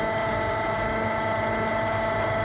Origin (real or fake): real